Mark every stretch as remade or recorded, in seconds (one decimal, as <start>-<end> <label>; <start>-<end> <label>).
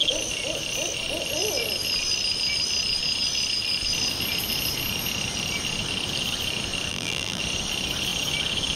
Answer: 0.0-6.9 recorded; 6.9-7.4 remade; 7.4-8.8 recorded